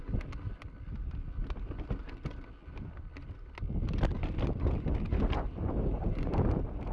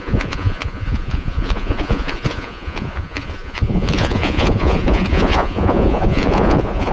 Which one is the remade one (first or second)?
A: second